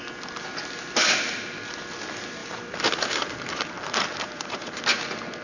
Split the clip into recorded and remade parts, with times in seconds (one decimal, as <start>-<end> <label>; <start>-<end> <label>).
0.0-2.4 recorded; 2.4-4.8 remade; 4.8-5.4 recorded